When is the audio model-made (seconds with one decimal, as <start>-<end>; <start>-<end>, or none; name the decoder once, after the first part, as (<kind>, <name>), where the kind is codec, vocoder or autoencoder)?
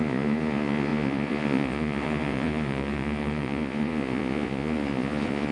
0.0-5.5 (vocoder, Vocos)